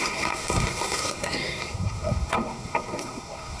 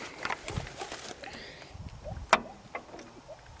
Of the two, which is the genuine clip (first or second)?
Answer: second